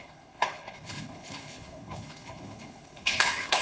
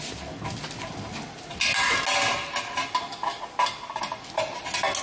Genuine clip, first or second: second